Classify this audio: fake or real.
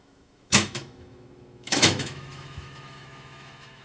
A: fake